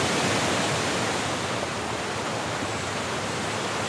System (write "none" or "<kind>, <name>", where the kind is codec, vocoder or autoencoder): none